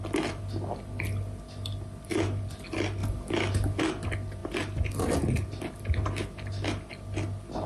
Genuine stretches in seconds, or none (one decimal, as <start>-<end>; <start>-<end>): 0.0-7.7